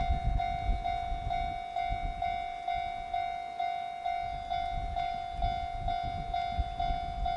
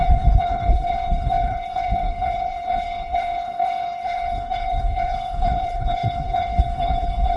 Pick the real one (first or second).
first